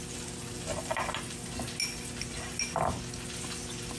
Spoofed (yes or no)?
no